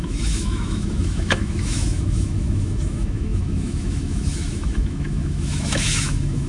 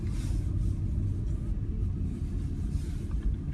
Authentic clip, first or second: second